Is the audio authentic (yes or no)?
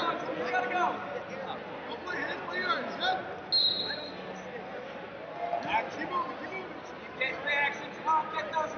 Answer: yes